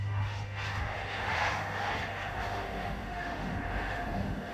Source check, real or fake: fake